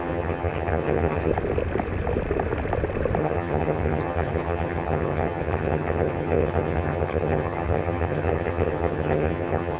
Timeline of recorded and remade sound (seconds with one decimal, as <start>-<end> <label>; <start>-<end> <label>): 0.0-1.3 remade; 1.3-3.2 recorded; 3.2-9.8 remade